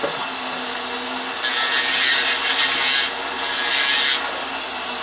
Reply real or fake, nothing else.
real